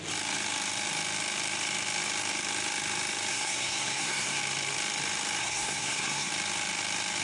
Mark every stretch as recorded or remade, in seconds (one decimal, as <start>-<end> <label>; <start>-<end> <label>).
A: 0.0-3.3 recorded; 3.3-4.4 remade; 4.4-5.4 recorded; 5.4-6.3 remade; 6.3-7.2 recorded